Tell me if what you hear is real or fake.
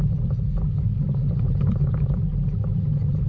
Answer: real